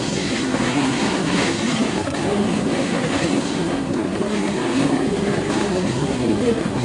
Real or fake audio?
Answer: fake